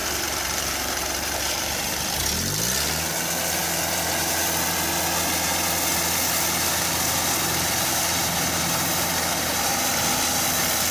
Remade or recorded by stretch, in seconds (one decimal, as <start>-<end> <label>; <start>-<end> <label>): 0.0-1.9 remade; 1.9-8.2 recorded; 8.2-9.9 remade; 9.9-10.9 recorded